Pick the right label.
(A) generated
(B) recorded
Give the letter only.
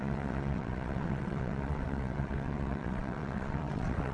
A